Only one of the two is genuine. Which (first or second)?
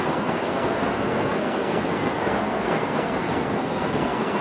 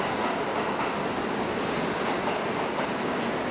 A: second